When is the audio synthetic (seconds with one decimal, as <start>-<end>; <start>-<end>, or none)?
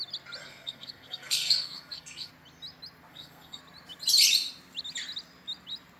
0.4-2.3; 3.1-3.6